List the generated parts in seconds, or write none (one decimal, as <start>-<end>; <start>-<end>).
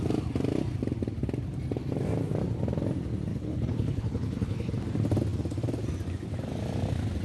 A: 3.3-4.7